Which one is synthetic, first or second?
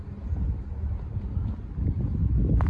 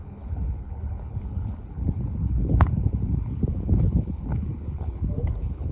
second